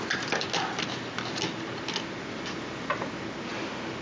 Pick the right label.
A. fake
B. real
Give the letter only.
B